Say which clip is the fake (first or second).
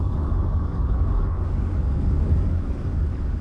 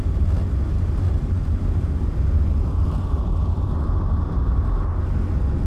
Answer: first